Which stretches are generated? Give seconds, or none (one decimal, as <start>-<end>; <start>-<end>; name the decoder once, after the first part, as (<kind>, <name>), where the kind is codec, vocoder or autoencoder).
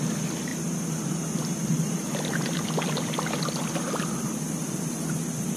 0.0-5.6 (vocoder, BigVGAN v2)